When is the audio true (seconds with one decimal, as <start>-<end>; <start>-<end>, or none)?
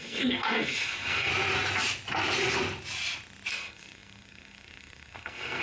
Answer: 1.3-3.5